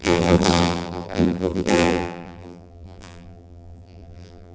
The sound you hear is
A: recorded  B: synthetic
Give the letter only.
B